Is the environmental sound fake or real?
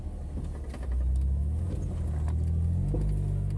real